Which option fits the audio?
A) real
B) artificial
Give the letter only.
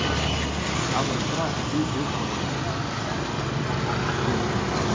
A